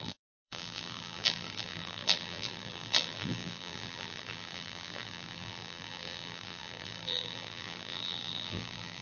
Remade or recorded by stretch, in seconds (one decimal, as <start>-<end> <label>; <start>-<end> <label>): 0.0-9.0 remade